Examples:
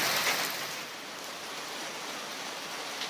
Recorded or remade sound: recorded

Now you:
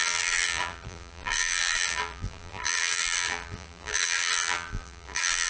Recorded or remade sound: remade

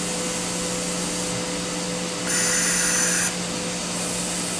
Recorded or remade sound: recorded